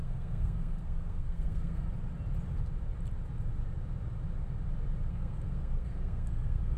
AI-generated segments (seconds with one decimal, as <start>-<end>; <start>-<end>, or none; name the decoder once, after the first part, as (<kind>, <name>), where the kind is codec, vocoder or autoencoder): 0.0-1.9 (codec, SNAC); 5.1-6.8